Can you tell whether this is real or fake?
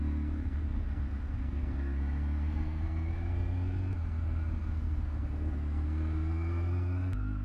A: fake